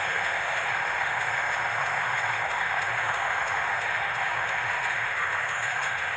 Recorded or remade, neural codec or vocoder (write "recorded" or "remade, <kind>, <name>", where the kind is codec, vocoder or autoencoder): remade, autoencoder, DAC-VAE